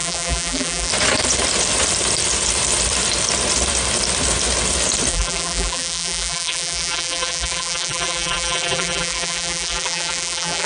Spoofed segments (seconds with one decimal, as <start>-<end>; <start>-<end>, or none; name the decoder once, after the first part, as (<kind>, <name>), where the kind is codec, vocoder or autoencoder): 0.0-0.9 (vocoder, BigVGAN v2); 5.1-10.7